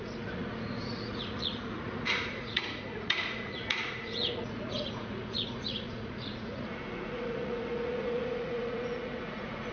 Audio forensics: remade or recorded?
remade